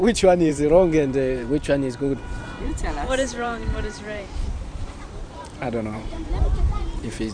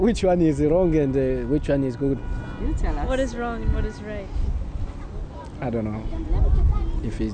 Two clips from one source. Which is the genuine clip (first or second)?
second